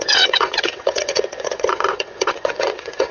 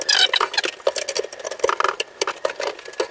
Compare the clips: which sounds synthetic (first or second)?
first